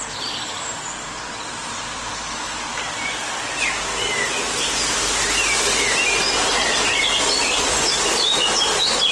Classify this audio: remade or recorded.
recorded